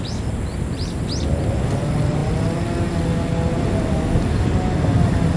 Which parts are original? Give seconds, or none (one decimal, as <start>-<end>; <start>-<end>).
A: 0.0-5.4